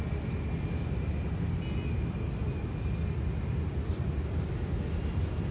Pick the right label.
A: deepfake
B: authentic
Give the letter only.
B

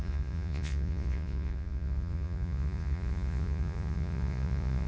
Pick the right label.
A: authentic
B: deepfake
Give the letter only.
B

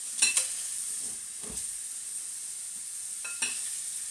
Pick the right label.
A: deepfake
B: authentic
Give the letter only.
B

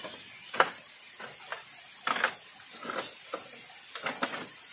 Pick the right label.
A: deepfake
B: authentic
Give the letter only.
B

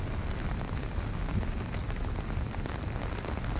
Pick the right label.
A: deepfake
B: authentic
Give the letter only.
B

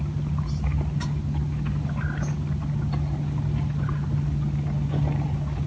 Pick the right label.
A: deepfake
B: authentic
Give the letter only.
B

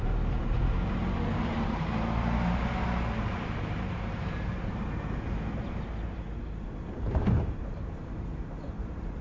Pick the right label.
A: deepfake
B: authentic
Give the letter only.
A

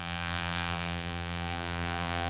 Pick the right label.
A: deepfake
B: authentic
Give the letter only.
A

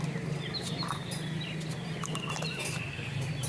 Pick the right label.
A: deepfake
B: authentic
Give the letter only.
B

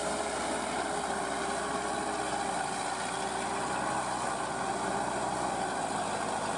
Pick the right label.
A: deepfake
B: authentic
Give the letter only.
B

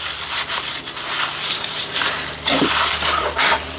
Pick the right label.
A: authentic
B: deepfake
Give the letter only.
B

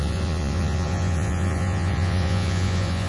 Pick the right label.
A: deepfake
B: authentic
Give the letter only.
A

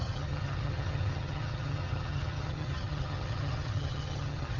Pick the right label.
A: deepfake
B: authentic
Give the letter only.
A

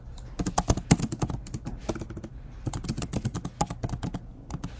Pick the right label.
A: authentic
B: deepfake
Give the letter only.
A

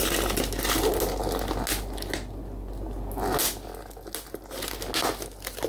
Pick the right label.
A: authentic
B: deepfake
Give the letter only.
A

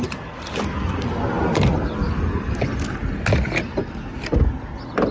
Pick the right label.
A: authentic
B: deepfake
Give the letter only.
A